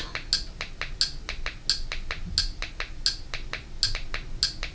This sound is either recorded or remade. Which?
recorded